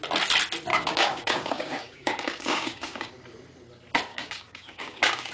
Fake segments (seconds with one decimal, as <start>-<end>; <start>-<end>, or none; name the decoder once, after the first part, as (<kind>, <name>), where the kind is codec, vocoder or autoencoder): 0.7-3.1 (codec, DAC); 4.1-5.3